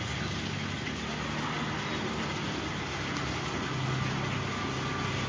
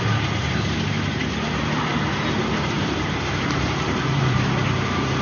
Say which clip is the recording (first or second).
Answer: first